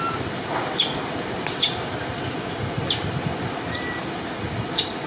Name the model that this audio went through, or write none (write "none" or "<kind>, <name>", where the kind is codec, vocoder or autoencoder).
none